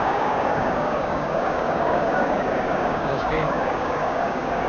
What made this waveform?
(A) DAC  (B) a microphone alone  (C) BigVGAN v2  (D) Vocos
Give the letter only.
A